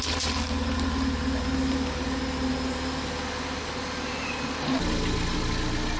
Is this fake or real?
real